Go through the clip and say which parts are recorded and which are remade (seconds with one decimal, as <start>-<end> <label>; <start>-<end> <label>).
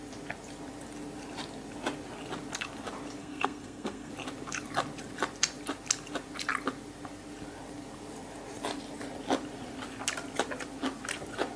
0.0-3.2 recorded; 3.2-4.1 remade; 4.1-11.6 recorded